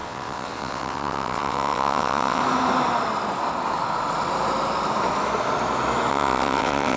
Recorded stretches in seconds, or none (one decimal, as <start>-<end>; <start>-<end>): 2.4-6.1